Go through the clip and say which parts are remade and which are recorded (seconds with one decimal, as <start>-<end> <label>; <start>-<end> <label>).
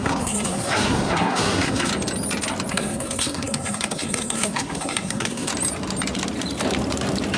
0.0-1.9 remade; 1.9-2.7 recorded; 2.7-5.5 remade; 5.5-7.4 recorded